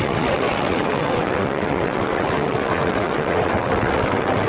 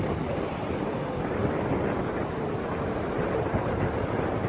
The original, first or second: second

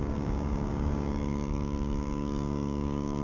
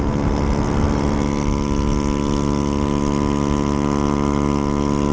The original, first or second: second